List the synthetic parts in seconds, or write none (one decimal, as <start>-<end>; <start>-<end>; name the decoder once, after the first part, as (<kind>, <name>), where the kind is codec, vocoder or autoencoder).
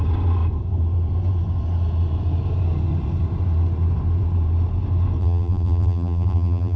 5.2-6.8 (vocoder, BigVGAN v2)